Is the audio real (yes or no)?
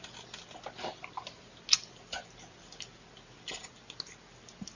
yes